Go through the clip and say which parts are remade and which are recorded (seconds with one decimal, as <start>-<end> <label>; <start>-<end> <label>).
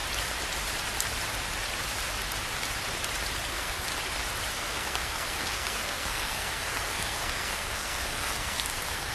0.0-3.5 recorded; 3.5-3.9 remade; 3.9-4.5 recorded; 4.5-9.1 remade